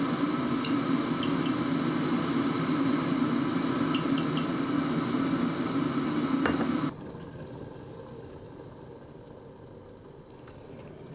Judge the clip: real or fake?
real